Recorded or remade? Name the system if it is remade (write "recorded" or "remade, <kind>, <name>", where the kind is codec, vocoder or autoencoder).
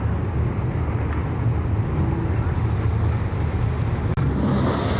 recorded